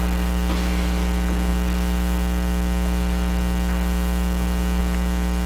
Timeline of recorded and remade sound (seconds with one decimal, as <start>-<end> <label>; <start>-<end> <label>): 0.0-5.5 recorded